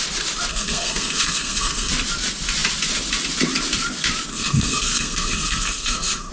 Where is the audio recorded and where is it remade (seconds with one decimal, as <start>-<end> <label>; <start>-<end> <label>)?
0.0-0.5 recorded; 0.5-1.9 remade; 1.9-4.3 recorded; 4.3-6.3 remade